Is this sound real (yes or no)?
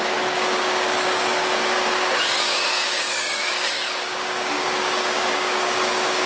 no